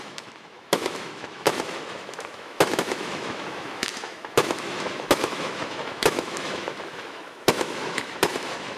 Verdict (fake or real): fake